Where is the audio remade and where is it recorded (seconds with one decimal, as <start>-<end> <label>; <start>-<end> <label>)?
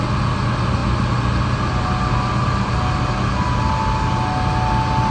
0.0-5.1 recorded